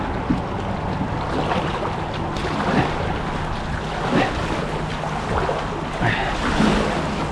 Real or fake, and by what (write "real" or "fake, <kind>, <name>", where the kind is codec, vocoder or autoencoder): real